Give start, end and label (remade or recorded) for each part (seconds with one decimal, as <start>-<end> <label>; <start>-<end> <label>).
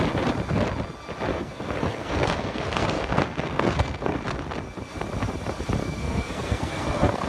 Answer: 0.0-1.3 recorded; 1.3-4.2 remade; 4.2-5.8 recorded; 5.8-7.3 remade